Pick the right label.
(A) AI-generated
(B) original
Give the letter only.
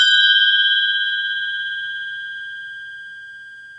B